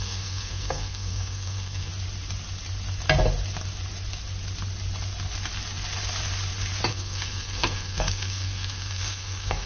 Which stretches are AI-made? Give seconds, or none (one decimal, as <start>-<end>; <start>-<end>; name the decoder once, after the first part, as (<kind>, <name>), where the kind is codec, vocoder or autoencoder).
0.0-1.9 (codec, SNAC); 6.9-9.7